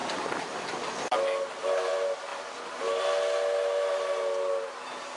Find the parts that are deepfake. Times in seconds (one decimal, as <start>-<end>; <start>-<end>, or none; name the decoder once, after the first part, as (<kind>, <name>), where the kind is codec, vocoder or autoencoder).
none